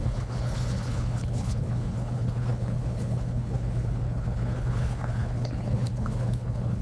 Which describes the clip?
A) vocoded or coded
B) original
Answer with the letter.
A